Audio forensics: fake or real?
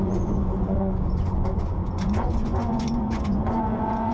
fake